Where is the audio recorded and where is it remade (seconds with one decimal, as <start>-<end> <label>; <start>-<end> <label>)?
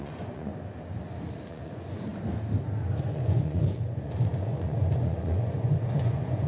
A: 0.0-0.5 remade; 0.5-1.5 recorded; 1.5-2.1 remade; 2.1-3.0 recorded; 3.0-6.5 remade